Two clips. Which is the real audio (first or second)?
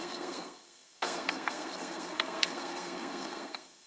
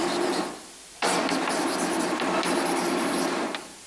second